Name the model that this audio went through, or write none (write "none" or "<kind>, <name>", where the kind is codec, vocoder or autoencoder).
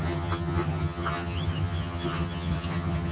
vocoder, HiFi-GAN